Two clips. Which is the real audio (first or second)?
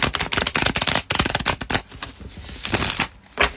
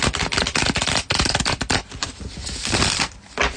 first